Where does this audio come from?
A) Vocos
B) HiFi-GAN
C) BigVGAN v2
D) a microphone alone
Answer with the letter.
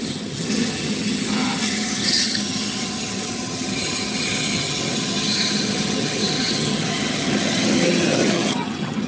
B